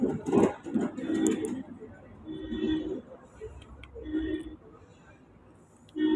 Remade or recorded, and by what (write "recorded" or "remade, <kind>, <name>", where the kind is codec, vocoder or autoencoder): recorded